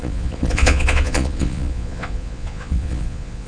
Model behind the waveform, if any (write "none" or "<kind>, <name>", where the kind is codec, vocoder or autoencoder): vocoder, Vocos